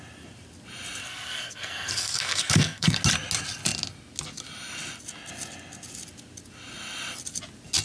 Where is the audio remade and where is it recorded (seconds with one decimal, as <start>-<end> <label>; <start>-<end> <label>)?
0.0-1.0 recorded; 1.0-3.0 remade; 3.0-7.8 recorded